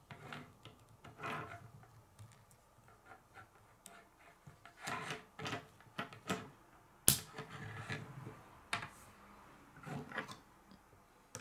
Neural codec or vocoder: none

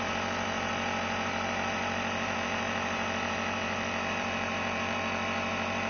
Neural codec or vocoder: vocoder, BigVGAN v2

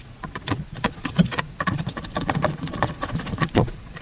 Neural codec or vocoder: vocoder, Vocos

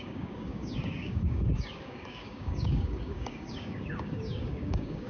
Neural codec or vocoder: codec, DAC